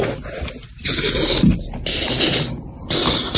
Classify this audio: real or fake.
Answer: real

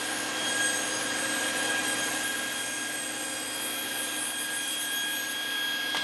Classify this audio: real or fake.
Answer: real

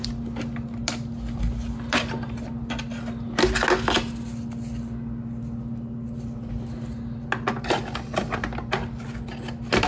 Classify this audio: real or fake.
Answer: real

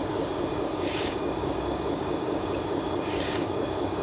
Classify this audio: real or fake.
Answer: fake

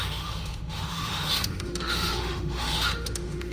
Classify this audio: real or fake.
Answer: fake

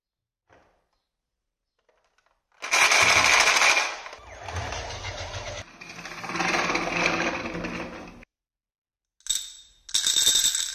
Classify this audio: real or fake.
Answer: real